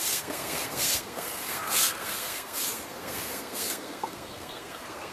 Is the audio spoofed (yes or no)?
yes